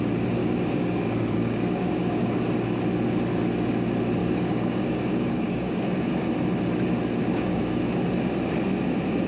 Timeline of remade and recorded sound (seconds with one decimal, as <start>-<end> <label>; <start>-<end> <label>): 0.0-0.4 recorded; 0.4-2.4 remade; 2.4-4.2 recorded; 4.2-6.1 remade; 6.1-7.2 recorded; 7.2-7.8 remade; 7.8-9.3 recorded